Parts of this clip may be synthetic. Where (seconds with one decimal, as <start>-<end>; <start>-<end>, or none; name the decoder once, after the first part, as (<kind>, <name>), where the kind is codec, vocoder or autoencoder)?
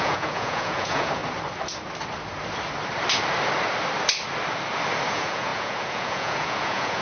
0.0-1.2 (vocoder, Vocos); 5.1-7.0